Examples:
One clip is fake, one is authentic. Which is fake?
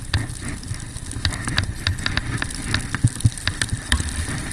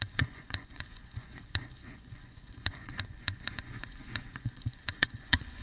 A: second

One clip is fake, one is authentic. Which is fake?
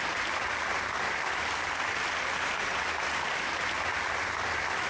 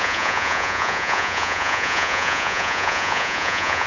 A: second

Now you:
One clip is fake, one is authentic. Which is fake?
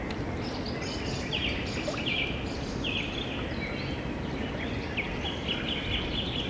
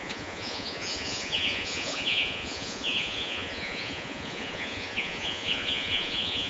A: second